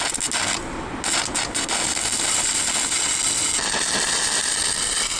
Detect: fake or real real